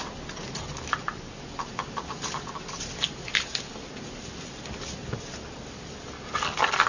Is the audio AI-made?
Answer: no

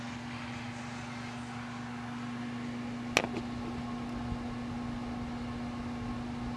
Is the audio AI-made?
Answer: no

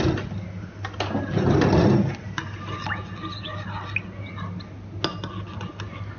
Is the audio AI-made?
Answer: no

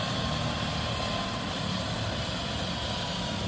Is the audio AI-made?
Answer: no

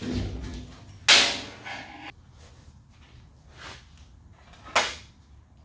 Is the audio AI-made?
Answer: no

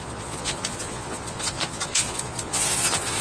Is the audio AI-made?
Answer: yes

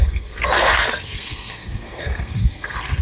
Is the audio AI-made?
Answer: yes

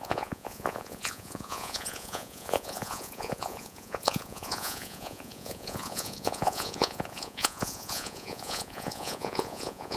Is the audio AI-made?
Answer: yes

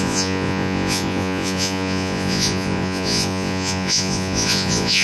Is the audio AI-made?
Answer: yes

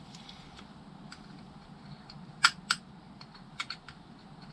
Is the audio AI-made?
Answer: yes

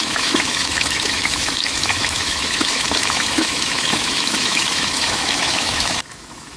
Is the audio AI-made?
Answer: yes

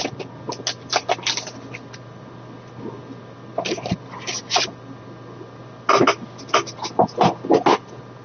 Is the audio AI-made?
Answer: no